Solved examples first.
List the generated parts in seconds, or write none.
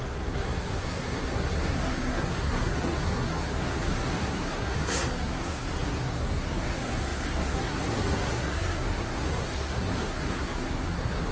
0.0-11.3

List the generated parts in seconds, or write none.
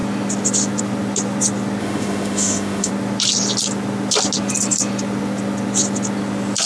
1.8-2.9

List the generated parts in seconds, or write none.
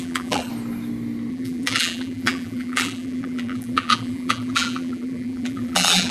0.0-0.5; 1.3-6.1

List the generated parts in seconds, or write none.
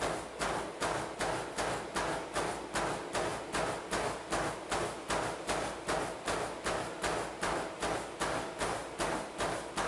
none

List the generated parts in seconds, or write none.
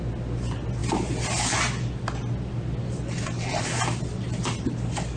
none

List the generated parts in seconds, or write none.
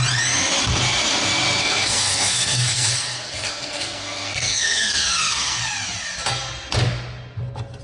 1.6-5.6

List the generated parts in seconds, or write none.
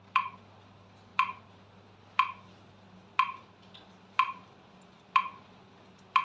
none